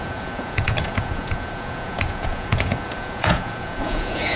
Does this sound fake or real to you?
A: fake